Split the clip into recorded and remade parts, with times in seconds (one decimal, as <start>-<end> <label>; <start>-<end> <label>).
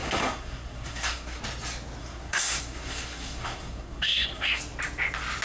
0.0-1.4 remade; 1.4-2.0 recorded; 2.0-4.6 remade; 4.6-5.4 recorded